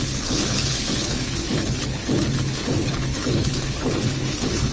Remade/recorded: remade